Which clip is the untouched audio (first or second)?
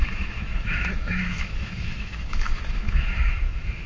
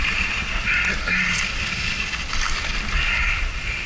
second